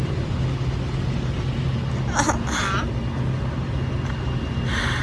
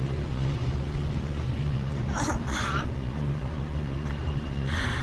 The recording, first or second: first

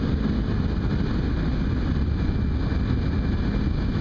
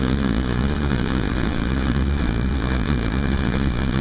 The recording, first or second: first